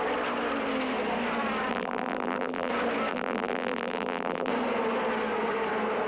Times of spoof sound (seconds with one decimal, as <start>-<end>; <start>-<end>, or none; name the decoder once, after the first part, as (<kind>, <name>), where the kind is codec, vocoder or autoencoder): 1.7-2.7 (vocoder, BigVGAN v2); 3.1-4.5